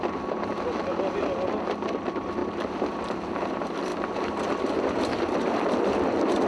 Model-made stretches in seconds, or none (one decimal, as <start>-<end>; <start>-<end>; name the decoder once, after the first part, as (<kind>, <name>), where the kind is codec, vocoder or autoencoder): 0.0-2.4 (vocoder, BigVGAN v2); 3.5-3.9; 4.8-6.5